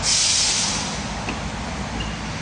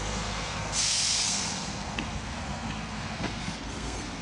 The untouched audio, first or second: first